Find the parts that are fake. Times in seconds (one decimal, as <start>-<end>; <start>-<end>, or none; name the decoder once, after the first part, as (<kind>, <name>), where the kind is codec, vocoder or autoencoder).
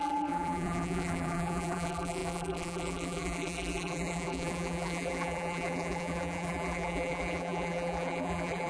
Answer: 0.0-8.7 (vocoder, BigVGAN v2)